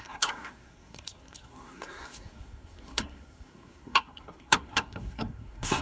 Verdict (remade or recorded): remade